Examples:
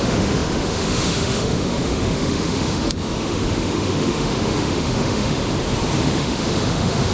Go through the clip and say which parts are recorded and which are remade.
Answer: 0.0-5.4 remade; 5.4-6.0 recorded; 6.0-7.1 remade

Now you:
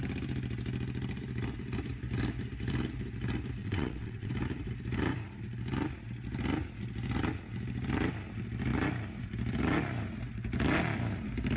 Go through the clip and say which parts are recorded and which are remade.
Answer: 0.0-3.6 recorded; 3.6-4.3 remade; 4.3-11.6 recorded

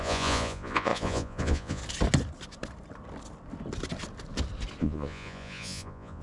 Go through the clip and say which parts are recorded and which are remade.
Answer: 0.0-1.8 remade; 1.8-4.8 recorded; 4.8-6.2 remade